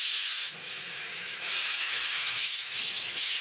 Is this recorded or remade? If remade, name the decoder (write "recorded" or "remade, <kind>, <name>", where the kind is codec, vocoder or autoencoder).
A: remade, autoencoder, DAC-VAE